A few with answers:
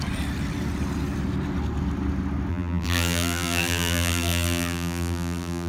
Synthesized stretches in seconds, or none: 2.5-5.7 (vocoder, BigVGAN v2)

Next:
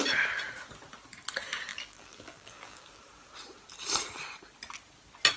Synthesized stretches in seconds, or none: 1.7-3.0 (vocoder, BigVGAN v2)

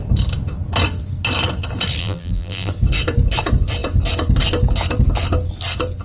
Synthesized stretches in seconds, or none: 2.0-2.7 (vocoder, BigVGAN v2)

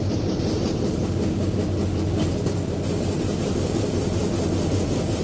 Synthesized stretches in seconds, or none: 0.0-1.7 (vocoder, BigVGAN v2); 3.4-4.2; 4.7-5.2